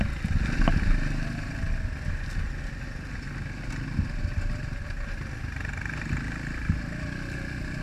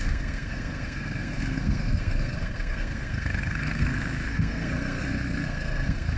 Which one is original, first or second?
first